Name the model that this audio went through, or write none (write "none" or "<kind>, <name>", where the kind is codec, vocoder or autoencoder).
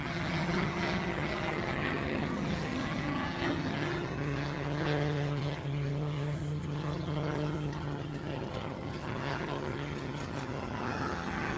vocoder, HiFi-GAN